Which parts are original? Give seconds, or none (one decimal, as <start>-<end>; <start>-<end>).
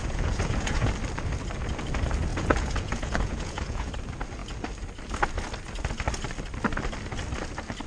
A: 0.9-2.3; 3.9-7.9